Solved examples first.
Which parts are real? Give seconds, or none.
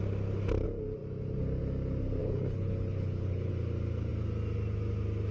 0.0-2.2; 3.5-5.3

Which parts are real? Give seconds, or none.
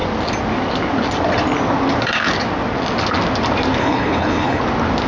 0.0-3.8; 4.6-5.1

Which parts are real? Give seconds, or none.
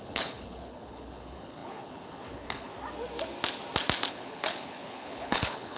2.7-4.1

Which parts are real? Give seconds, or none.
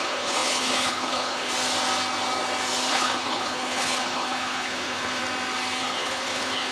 1.5-2.9; 5.2-5.8